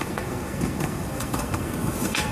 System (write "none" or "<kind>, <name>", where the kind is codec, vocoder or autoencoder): codec, SNAC